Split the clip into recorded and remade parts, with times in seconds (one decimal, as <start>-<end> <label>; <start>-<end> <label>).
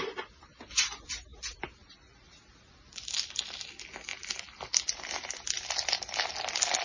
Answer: 0.0-6.8 recorded